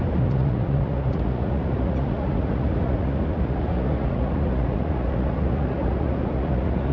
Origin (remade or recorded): remade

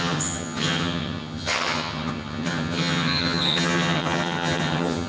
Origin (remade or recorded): remade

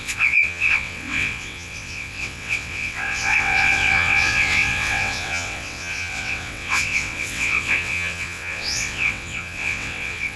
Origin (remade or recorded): remade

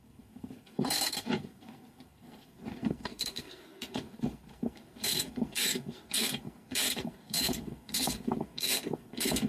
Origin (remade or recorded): remade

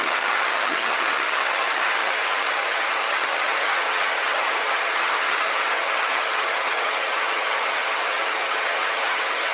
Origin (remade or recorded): remade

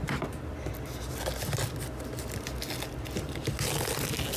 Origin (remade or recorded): recorded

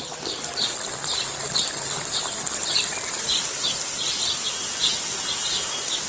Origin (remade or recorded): recorded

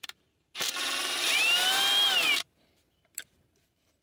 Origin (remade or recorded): remade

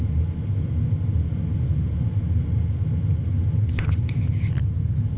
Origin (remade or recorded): recorded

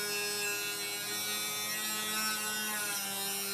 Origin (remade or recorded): recorded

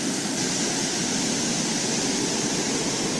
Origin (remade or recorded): recorded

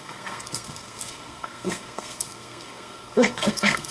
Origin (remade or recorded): remade